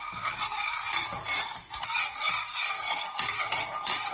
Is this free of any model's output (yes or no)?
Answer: yes